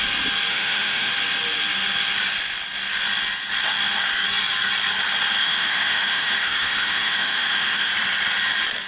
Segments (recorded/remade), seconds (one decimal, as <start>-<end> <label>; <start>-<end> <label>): 0.0-0.5 recorded; 0.5-1.1 remade; 1.1-5.4 recorded; 5.4-7.9 remade; 7.9-8.9 recorded

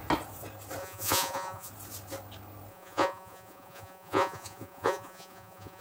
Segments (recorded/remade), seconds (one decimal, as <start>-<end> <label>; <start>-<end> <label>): 0.0-0.8 recorded; 0.8-1.7 remade; 1.7-2.7 recorded; 2.7-5.8 remade

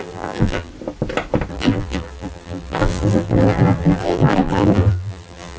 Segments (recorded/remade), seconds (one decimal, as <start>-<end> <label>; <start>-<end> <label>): 0.0-0.7 remade; 0.7-1.5 recorded; 1.5-5.6 remade

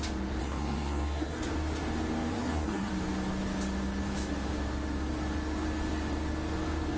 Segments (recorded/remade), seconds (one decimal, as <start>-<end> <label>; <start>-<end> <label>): 0.0-0.4 recorded; 0.4-1.5 remade; 1.5-2.3 recorded; 2.3-2.9 remade; 2.9-7.0 recorded

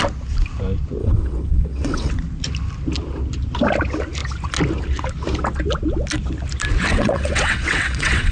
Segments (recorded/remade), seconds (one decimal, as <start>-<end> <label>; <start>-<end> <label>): 0.0-1.0 recorded; 1.0-2.1 remade; 2.1-6.9 recorded; 6.9-8.3 remade

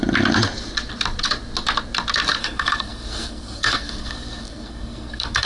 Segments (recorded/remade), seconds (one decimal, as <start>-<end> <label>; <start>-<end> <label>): 0.0-2.4 recorded; 2.4-5.5 remade

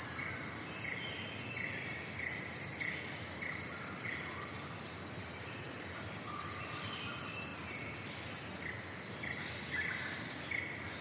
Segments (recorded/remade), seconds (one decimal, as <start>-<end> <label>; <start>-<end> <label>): 0.0-11.0 recorded